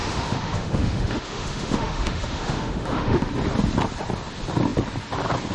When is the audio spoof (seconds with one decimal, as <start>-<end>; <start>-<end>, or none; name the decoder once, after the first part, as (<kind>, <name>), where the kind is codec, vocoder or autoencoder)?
0.0-3.3 (autoencoder, DAC-VAE)